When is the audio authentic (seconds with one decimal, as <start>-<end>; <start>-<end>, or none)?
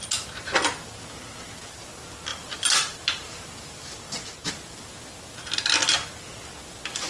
0.0-2.3; 4.5-7.1